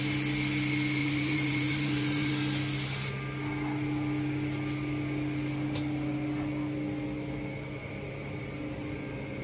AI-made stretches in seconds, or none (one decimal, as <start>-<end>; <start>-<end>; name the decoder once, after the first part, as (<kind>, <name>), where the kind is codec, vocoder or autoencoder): 1.0-2.3 (vocoder, BigVGAN v2); 7.8-8.6